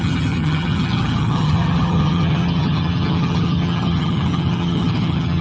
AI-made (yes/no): yes